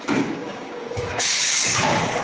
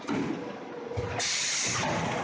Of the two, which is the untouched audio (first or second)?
second